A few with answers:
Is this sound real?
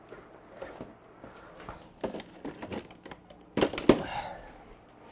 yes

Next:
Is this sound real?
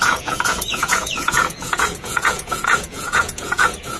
no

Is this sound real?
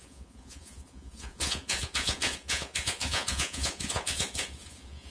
no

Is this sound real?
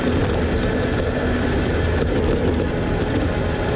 yes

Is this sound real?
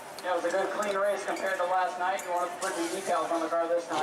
yes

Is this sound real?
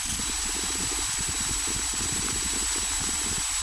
yes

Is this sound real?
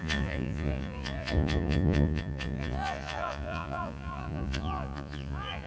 no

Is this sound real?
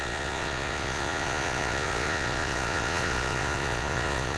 no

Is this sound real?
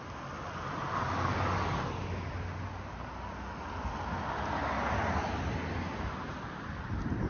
yes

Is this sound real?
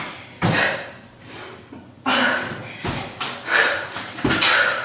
yes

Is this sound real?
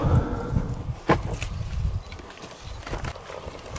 yes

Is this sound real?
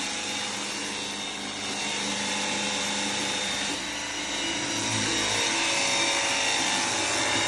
yes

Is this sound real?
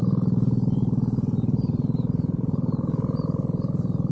yes